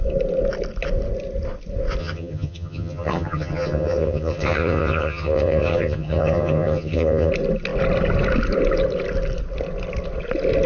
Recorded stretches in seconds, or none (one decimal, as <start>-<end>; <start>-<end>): 0.0-2.0; 7.3-10.7